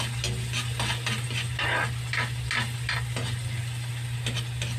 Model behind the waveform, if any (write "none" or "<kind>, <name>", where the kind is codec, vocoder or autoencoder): none